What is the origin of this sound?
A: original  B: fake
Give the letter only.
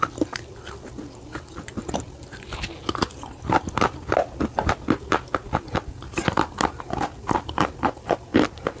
A